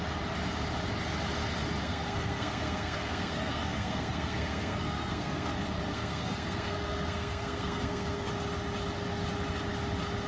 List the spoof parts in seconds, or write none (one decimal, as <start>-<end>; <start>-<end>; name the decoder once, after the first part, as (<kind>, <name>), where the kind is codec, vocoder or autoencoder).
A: 1.8-5.5 (codec, SNAC); 5.9-8.3

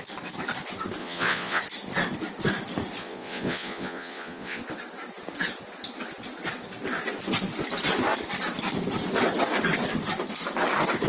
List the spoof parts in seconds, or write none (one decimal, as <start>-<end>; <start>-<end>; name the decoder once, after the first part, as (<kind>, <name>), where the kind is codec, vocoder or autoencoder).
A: 1.0-1.6 (vocoder, Vocos); 3.0-4.6

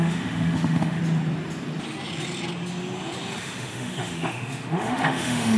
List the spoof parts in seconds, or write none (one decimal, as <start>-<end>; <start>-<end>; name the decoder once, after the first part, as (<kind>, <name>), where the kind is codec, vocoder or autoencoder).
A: 0.0-1.0 (autoencoder, DAC-VAE); 3.4-5.6